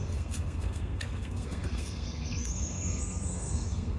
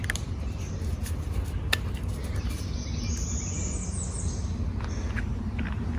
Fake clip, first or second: first